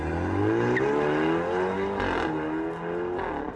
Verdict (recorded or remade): recorded